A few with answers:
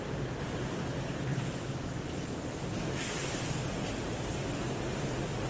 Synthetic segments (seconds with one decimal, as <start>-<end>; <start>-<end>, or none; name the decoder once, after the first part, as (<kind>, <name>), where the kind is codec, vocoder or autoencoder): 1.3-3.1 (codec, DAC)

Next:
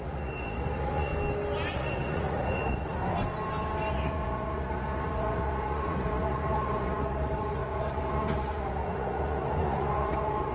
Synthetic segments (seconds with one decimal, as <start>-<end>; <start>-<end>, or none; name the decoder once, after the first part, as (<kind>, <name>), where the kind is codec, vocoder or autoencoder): 0.0-1.1 (vocoder, Vocos); 1.7-3.0; 3.9-10.5

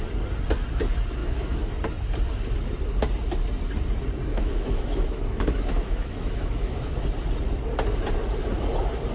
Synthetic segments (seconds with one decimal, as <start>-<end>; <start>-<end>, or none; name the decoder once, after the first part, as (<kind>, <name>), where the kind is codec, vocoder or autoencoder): 1.2-1.8 (autoencoder, DAC-VAE); 4.3-6.9

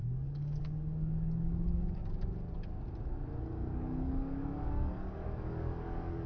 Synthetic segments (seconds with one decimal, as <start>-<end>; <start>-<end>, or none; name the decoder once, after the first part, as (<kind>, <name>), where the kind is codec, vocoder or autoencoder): 0.0-2.0 (codec, DAC); 3.4-6.3

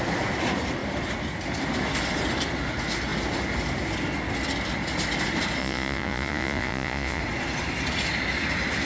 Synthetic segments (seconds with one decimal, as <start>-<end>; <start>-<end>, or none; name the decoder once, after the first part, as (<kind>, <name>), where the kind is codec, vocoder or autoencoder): 5.6-7.2 (vocoder, Vocos)